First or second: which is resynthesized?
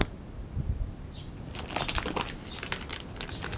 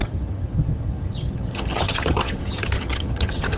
second